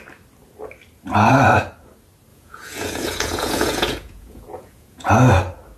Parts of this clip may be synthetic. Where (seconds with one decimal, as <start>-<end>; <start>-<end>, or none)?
2.3-5.1